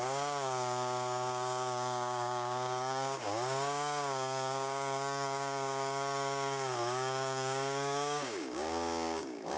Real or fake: fake